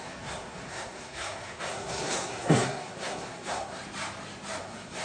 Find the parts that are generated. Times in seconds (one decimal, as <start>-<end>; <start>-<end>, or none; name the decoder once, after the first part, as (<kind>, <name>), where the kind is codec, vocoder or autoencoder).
0.0-3.8 (codec, SNAC); 4.6-5.0